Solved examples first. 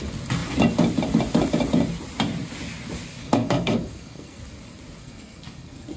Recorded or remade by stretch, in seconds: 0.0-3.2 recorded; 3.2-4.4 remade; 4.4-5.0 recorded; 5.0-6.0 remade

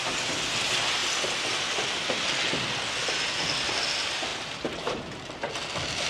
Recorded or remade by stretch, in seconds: 0.0-6.1 recorded

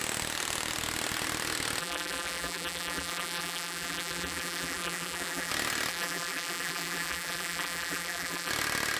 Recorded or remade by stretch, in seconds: 0.0-1.8 recorded; 1.8-5.5 remade; 5.5-5.9 recorded; 5.9-8.5 remade; 8.5-9.0 recorded